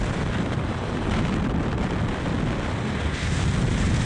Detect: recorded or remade recorded